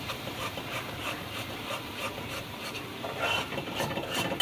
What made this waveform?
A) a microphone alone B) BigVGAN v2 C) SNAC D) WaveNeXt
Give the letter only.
B